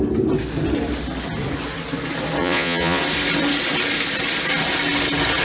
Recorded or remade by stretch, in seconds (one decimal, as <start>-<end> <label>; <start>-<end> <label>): 0.0-2.4 recorded; 2.4-3.0 remade; 3.0-5.4 recorded